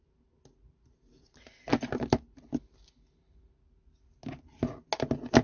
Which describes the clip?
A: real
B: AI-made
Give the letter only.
A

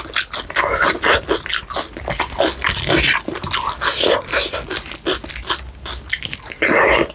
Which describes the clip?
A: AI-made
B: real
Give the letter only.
B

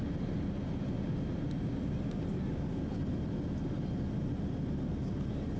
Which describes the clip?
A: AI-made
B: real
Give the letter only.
B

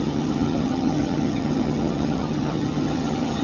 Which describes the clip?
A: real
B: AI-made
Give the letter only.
B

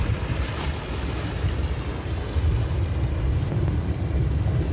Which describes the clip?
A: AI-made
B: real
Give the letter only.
B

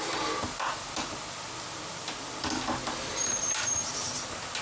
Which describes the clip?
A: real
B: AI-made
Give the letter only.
A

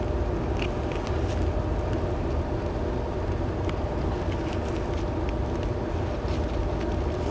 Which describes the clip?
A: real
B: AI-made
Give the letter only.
A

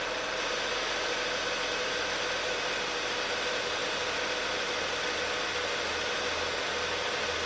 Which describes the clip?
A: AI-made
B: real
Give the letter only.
B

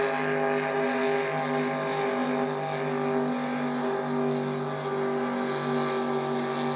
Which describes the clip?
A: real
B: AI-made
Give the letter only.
A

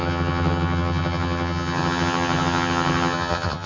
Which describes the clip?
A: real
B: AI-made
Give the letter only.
B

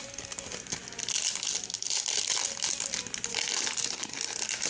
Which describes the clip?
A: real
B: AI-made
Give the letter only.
A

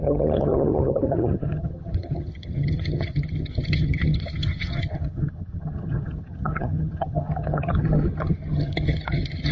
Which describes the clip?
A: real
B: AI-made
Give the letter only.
B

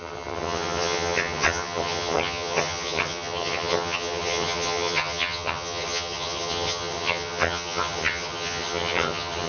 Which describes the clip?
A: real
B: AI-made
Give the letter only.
B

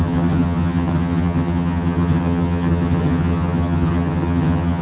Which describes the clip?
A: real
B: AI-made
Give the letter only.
B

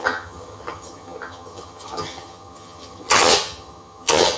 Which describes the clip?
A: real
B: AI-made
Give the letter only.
B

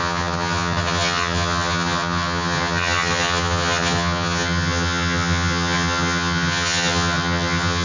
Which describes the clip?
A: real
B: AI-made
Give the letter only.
B